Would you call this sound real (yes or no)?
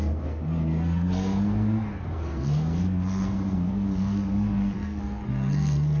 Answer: no